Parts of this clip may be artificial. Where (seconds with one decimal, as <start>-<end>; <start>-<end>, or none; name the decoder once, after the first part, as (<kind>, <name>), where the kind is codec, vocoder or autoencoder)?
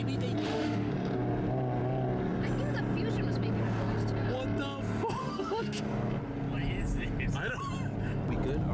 0.4-0.9 (autoencoder, DAC-VAE); 5.2-5.8